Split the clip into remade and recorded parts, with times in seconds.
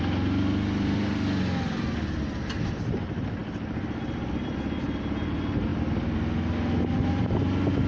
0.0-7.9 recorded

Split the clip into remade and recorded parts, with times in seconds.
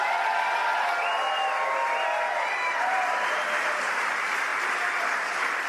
0.0-5.7 recorded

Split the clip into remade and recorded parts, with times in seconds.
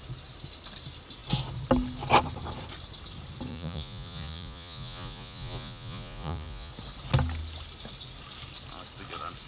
0.0-3.5 recorded; 3.5-6.7 remade; 6.7-9.5 recorded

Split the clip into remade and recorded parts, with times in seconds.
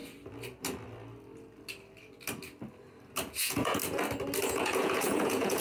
0.0-3.4 recorded; 3.4-3.8 remade; 3.8-4.5 recorded; 4.5-5.6 remade